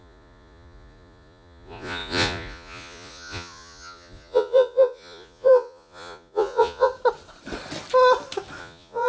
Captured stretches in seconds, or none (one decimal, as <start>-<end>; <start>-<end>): 6.9-8.6